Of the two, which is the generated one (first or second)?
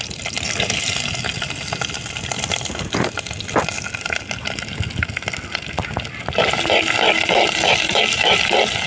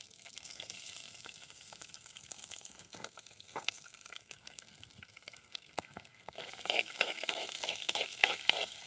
second